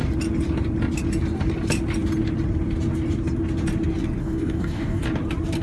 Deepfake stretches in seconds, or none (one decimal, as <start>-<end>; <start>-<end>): 4.2-5.0